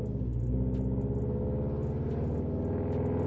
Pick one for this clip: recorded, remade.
recorded